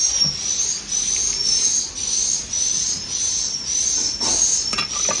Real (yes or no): yes